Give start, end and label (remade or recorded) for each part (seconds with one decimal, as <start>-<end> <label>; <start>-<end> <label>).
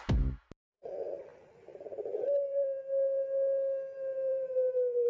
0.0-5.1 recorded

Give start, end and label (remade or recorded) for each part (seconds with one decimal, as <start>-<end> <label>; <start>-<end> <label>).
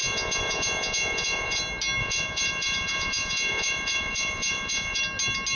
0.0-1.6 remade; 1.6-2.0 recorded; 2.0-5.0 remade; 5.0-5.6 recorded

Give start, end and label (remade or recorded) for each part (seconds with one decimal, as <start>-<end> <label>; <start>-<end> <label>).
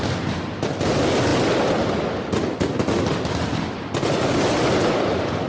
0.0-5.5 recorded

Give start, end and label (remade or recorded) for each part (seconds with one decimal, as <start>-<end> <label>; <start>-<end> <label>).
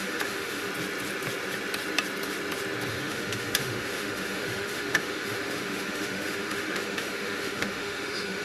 0.0-0.7 remade; 0.7-2.9 recorded; 2.9-8.4 remade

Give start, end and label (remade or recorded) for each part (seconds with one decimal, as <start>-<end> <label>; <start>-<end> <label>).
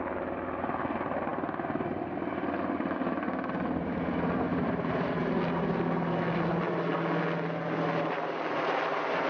0.0-4.5 recorded; 4.5-5.2 remade; 5.2-9.3 recorded